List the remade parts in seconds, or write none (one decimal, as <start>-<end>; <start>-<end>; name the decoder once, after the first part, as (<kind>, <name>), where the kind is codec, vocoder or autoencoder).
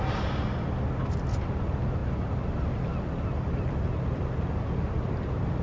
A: none